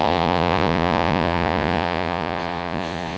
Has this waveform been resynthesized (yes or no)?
yes